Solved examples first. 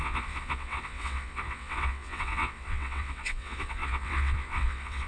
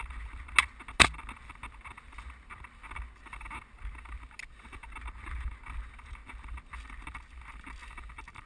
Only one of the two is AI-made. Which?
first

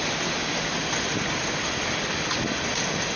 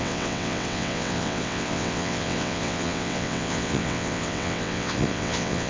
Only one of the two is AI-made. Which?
second